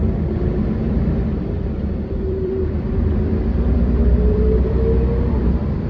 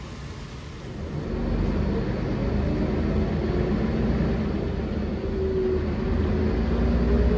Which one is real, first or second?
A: second